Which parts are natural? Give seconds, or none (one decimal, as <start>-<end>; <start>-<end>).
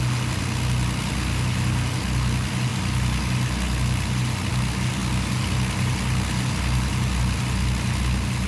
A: 0.0-8.5